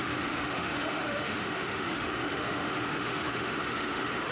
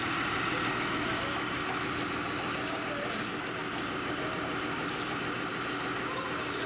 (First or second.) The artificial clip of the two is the first